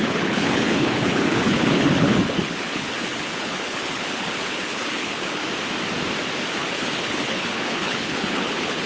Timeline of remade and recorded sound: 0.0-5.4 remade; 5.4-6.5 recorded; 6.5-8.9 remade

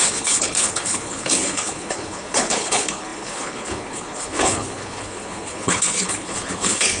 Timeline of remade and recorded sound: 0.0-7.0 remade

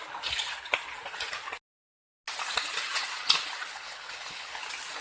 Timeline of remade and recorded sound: 0.0-3.7 recorded; 3.7-4.6 remade; 4.6-5.0 recorded

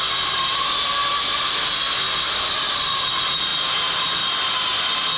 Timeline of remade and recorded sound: 0.0-5.2 recorded

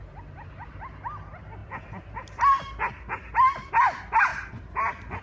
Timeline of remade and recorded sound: 0.0-5.2 recorded